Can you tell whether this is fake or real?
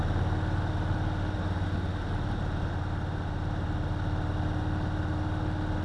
real